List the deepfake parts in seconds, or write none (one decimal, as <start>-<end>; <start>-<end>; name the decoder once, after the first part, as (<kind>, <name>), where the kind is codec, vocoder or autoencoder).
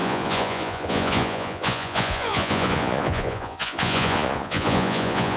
0.0-5.4 (vocoder, Vocos)